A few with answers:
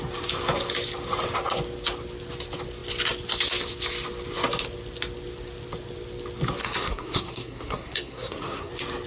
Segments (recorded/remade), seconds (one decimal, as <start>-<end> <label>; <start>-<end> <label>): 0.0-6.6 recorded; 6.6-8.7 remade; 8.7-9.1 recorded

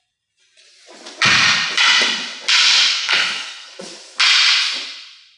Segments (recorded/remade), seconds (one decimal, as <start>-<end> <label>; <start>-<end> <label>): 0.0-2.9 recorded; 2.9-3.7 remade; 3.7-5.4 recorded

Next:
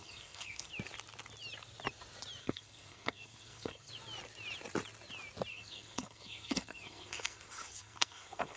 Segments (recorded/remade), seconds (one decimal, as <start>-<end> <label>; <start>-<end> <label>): 0.0-0.7 remade; 0.7-2.4 recorded; 2.4-3.9 remade; 3.9-5.5 recorded; 5.5-8.6 remade